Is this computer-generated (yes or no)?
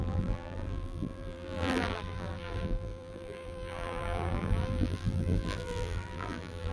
yes